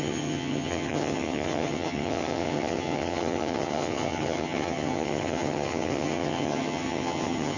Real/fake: fake